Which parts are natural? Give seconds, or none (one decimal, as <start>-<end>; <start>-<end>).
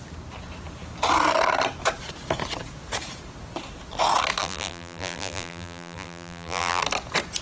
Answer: 0.0-4.4; 6.8-7.4